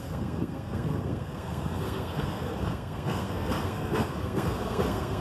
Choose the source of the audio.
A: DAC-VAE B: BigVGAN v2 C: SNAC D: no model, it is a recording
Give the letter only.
C